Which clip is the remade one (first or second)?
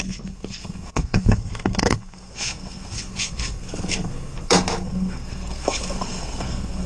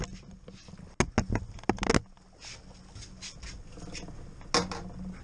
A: first